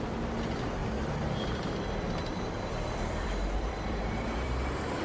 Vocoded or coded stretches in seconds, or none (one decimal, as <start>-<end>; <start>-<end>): 0.8-1.7; 2.3-5.0